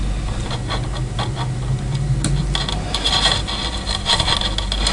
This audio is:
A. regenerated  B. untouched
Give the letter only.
B